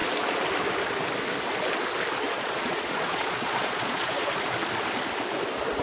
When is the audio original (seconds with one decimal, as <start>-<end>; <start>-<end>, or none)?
0.0-2.3; 4.3-5.8